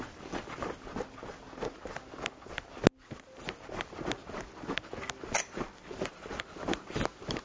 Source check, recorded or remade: recorded